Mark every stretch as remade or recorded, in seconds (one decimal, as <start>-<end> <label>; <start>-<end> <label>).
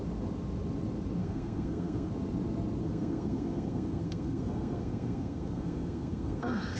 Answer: 0.0-1.2 recorded; 1.2-2.1 remade; 2.1-2.8 recorded; 2.8-6.8 remade